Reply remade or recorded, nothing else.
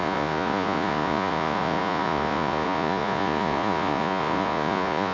remade